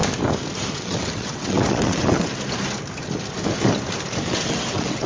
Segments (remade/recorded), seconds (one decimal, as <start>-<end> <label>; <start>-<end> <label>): 0.0-0.7 recorded; 0.7-2.3 remade; 2.3-4.3 recorded; 4.3-5.1 remade